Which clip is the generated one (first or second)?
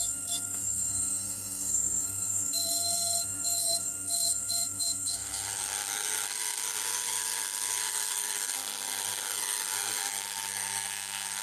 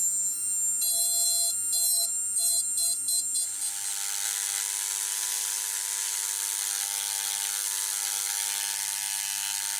first